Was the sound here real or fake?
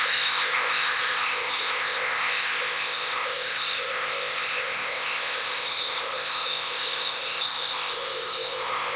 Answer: fake